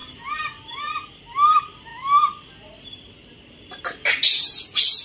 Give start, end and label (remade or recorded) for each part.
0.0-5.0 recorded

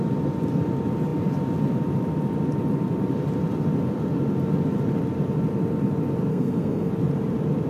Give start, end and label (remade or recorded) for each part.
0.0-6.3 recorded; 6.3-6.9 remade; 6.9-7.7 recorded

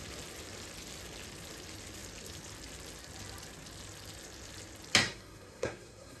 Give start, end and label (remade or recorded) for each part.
0.0-5.0 recorded; 5.0-6.2 remade

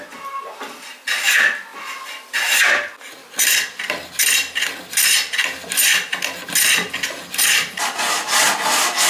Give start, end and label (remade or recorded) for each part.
0.0-9.1 recorded

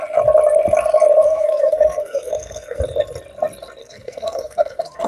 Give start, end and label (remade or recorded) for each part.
0.0-1.2 recorded; 1.2-2.8 remade; 2.8-3.8 recorded; 3.8-5.1 remade

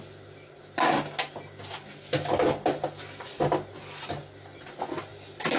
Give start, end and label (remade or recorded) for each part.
0.0-5.6 recorded